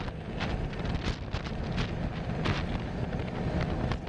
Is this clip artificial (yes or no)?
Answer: no